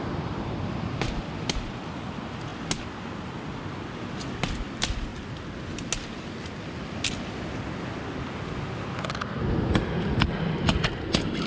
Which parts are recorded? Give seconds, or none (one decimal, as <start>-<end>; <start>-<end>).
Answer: 0.0-11.5